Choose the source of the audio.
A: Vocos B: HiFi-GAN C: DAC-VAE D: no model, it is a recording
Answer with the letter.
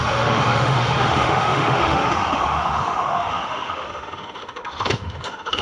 C